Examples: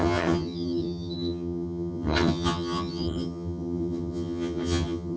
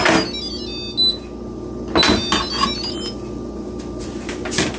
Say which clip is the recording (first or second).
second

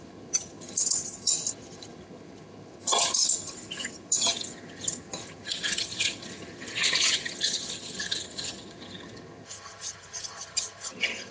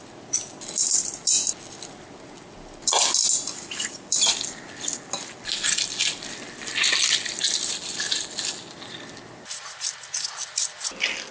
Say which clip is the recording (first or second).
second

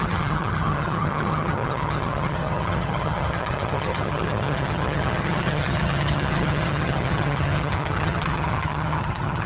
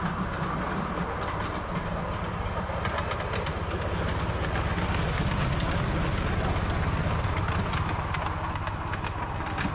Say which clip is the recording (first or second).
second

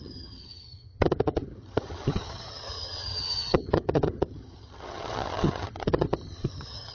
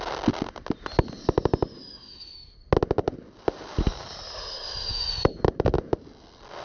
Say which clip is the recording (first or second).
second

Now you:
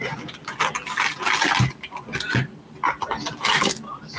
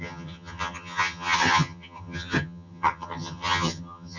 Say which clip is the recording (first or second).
first